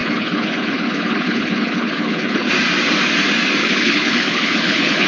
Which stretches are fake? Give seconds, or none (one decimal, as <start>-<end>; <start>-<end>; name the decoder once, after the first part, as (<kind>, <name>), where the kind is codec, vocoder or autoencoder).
0.0-2.5 (codec, HILCodec); 3.6-5.1